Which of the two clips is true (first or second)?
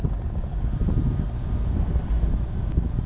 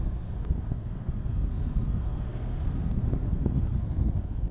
first